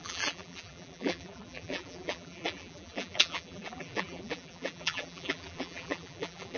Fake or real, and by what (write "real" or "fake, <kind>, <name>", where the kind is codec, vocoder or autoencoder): fake, vocoder, BigVGAN v2